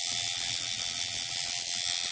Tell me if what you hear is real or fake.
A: real